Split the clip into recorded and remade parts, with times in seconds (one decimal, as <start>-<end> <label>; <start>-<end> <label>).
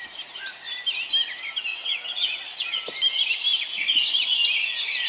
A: 0.0-1.7 recorded; 1.7-2.8 remade; 2.8-5.1 recorded